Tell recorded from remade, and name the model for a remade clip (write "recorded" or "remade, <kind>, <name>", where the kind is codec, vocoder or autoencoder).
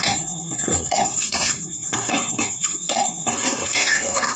remade, codec, SNAC